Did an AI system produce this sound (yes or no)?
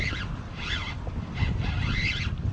no